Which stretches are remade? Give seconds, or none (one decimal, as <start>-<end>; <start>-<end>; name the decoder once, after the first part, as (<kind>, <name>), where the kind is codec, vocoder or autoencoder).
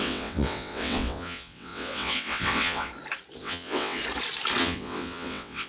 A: 0.0-2.9 (vocoder, WaveNeXt); 3.4-4.0; 4.6-5.7